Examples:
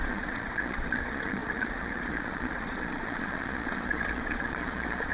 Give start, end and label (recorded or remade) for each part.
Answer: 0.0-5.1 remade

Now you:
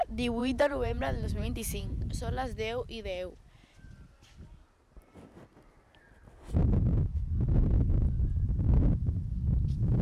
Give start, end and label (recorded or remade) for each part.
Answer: 0.0-0.4 recorded; 0.4-2.1 remade; 2.1-10.0 recorded

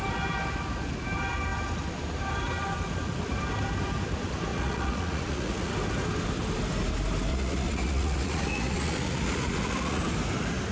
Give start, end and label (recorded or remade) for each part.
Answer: 0.0-4.5 recorded; 4.5-5.7 remade; 5.7-7.3 recorded; 7.3-10.0 remade; 10.0-10.7 recorded